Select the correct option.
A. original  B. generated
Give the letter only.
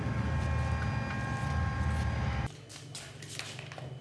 A